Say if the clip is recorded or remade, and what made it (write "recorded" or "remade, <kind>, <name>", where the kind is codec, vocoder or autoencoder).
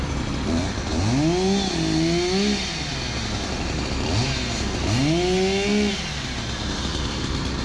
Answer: recorded